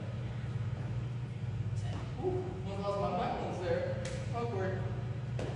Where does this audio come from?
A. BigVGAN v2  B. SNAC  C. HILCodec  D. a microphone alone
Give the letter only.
D